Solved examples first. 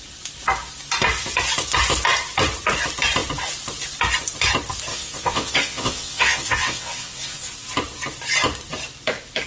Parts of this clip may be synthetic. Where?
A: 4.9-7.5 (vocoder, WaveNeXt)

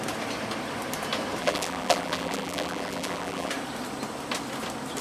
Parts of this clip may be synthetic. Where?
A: 1.4-3.5 (vocoder, BigVGAN v2)

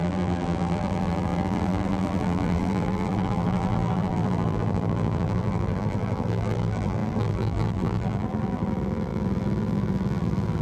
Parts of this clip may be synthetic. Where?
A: 0.0-10.6 (vocoder, BigVGAN v2)

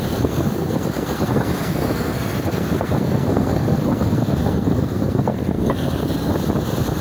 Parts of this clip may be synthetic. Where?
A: 0.0-6.3 (codec, SNAC)

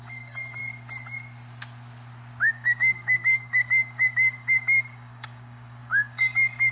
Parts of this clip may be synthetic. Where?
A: 0.0-0.6 (codec, DAC); 2.5-6.7